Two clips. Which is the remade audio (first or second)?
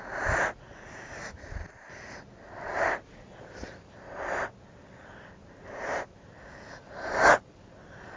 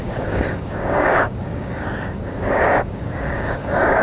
second